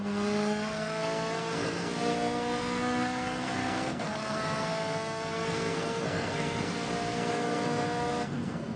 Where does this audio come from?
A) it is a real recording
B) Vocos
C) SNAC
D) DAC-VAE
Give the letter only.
C